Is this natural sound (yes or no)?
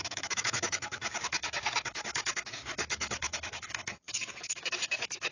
no